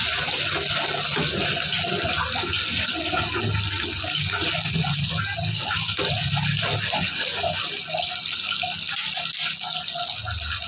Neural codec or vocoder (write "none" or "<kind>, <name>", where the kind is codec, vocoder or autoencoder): none